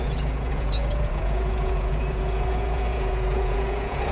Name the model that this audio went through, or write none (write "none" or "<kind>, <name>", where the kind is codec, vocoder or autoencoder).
vocoder, Vocos